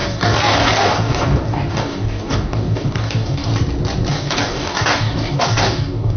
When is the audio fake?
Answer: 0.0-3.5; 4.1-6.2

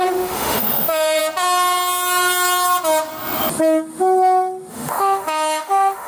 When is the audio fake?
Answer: 0.0-1.2; 4.7-6.1

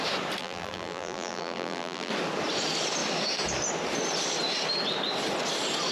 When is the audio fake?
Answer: 0.4-2.1

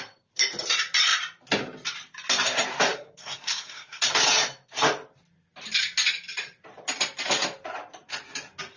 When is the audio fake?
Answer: 2.9-4.0

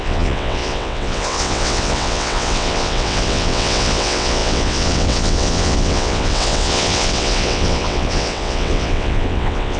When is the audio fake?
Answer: 0.0-9.8

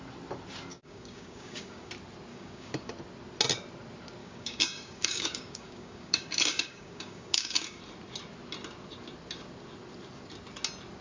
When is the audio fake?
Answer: 0.7-1.9; 2.3-2.9; 4.2-7.8